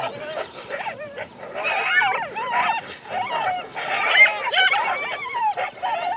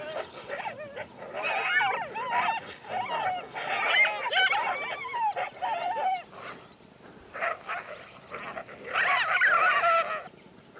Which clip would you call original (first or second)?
second